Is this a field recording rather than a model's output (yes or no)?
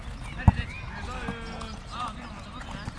yes